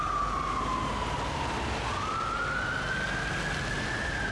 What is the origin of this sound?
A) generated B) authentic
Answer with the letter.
B